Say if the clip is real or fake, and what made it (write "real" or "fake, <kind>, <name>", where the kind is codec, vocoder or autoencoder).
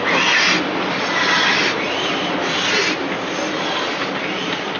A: real